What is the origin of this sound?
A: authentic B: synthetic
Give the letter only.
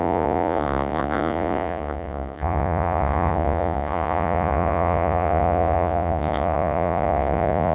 B